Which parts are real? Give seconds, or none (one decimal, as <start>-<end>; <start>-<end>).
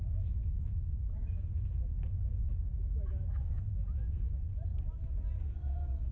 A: 1.4-2.4; 4.3-6.1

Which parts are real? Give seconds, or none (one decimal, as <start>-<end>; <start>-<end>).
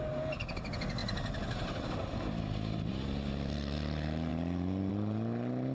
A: 0.0-5.7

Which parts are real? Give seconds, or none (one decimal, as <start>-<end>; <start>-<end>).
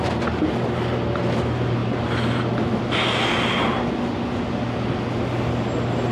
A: 0.0-6.1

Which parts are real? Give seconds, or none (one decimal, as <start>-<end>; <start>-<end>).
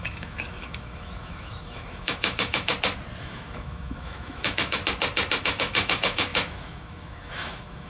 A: 2.7-3.2; 4.8-5.4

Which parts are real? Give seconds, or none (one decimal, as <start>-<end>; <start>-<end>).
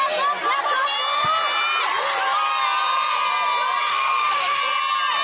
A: 0.0-3.9; 4.6-5.2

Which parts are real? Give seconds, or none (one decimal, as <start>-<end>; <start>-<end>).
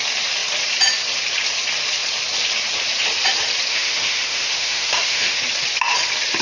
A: 0.0-3.7; 5.4-6.4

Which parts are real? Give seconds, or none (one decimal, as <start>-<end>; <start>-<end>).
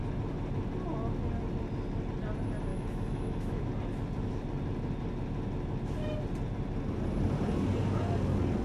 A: 0.0-2.7; 3.7-8.6